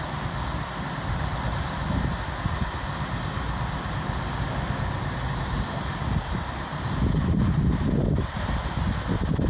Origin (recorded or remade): recorded